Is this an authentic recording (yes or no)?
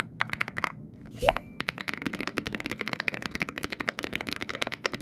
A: no